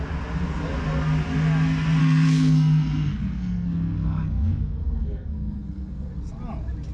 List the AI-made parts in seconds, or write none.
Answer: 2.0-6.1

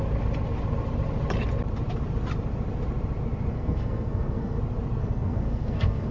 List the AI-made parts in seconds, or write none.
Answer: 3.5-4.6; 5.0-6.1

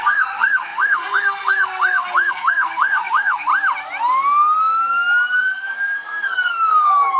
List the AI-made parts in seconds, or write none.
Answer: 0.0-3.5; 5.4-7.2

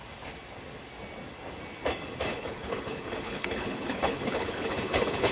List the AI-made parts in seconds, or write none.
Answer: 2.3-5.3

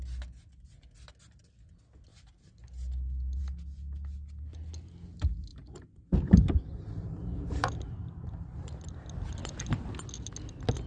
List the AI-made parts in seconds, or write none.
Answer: 5.5-8.8